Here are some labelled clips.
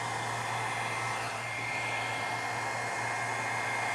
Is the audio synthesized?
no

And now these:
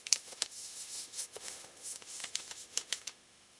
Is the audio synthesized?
yes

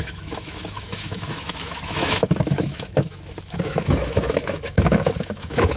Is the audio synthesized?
yes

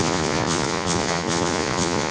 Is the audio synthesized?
yes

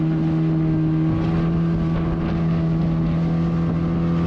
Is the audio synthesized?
no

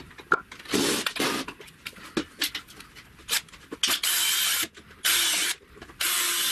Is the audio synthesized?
no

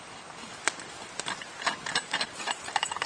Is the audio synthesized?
no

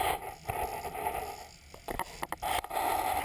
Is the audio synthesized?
no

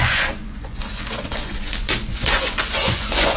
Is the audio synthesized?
yes